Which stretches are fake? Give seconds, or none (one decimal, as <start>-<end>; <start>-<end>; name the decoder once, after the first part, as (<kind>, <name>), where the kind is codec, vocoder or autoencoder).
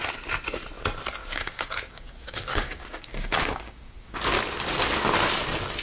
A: 1.2-4.2 (codec, DAC)